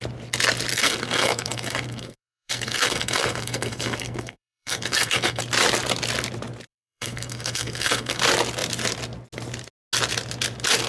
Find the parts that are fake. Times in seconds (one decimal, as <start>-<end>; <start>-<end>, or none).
0.7-5.4; 6.7-8.2